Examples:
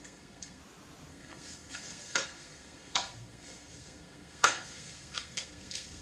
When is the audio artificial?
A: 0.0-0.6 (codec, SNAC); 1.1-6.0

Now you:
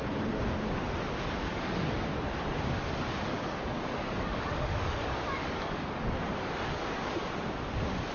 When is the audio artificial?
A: 1.5-2.2 (codec, DAC); 3.3-7.2

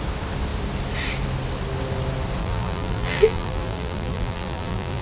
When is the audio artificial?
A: 2.4-5.0 (vocoder, BigVGAN v2)

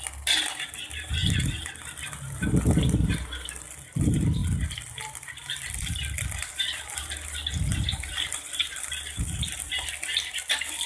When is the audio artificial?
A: 0.0-4.4 (vocoder, BigVGAN v2); 5.0-9.6; 10.5-10.9